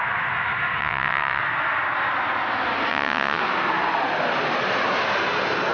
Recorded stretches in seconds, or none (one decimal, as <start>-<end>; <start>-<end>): 0.0-0.8; 1.4-2.9; 3.4-5.7